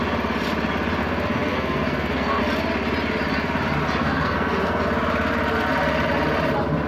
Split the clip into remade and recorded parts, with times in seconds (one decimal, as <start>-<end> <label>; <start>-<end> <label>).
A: 0.0-1.0 recorded; 1.0-2.4 remade; 2.4-4.0 recorded; 4.0-4.8 remade; 4.8-6.9 recorded

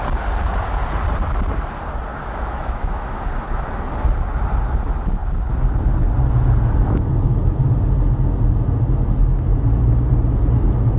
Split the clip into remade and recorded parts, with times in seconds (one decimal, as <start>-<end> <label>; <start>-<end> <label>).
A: 0.0-2.1 recorded; 2.1-3.3 remade; 3.3-11.0 recorded

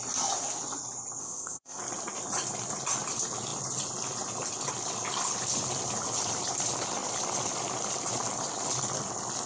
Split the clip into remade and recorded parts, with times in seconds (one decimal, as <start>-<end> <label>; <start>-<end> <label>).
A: 0.0-1.2 recorded; 1.2-1.8 remade; 1.8-9.5 recorded

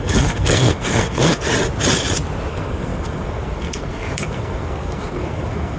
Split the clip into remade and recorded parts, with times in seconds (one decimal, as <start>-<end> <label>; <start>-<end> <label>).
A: 0.0-1.5 remade; 1.5-2.5 recorded; 2.5-5.8 remade